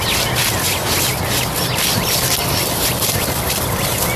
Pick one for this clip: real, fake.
real